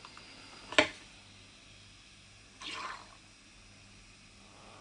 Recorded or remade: recorded